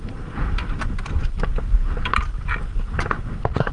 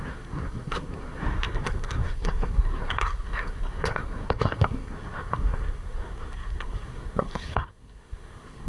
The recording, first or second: first